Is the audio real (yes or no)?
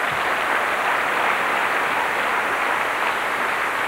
yes